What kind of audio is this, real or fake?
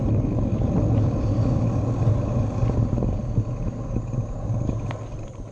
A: real